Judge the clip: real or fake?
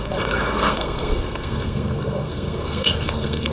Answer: fake